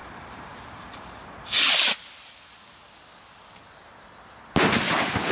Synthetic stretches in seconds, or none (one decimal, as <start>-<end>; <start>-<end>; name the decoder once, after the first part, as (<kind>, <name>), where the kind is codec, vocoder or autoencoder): 0.0-1.7 (vocoder, BigVGAN v2)